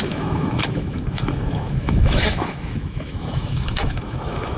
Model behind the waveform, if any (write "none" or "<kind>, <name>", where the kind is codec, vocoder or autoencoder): autoencoder, DAC-VAE